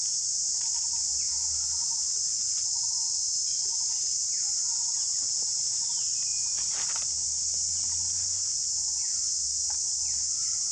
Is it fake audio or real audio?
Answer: fake